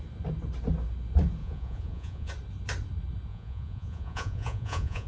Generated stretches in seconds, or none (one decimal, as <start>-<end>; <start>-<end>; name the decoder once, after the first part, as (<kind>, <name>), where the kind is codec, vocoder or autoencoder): 1.4-2.3 (vocoder, Vocos); 3.3-5.1